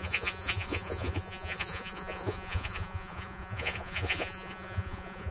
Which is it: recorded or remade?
remade